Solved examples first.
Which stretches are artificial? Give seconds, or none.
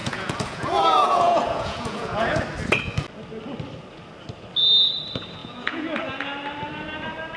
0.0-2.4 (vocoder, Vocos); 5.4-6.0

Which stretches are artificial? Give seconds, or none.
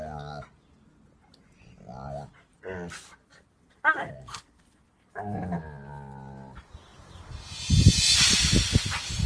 4.0-4.6 (codec, SNAC)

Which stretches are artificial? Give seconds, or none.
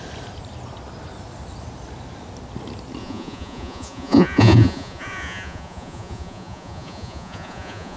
3.0-8.0 (vocoder, Vocos)